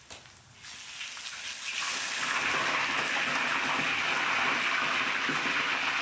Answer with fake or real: real